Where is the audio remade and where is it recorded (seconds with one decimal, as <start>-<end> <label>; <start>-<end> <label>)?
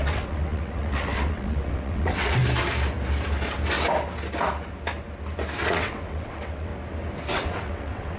0.0-2.4 remade; 2.4-5.7 recorded; 5.7-6.7 remade; 6.7-7.3 recorded; 7.3-8.2 remade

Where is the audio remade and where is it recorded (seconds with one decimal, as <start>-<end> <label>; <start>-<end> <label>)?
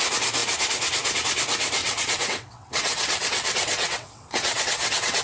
0.0-1.8 recorded; 1.8-5.2 remade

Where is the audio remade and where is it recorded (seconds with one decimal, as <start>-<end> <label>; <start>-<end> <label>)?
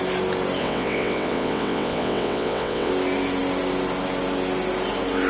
0.0-0.6 recorded; 0.6-2.9 remade; 2.9-5.3 recorded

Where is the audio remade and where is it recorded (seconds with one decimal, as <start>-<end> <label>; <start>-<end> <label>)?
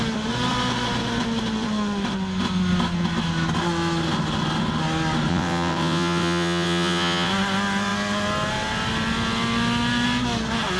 0.0-5.3 recorded; 5.3-7.3 remade; 7.3-10.8 recorded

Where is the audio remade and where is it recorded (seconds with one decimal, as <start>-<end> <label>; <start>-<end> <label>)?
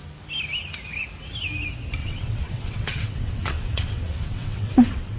0.0-2.0 recorded; 2.0-5.2 remade